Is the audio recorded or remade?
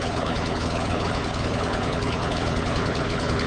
remade